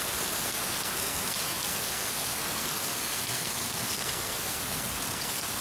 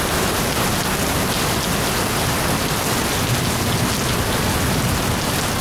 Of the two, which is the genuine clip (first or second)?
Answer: second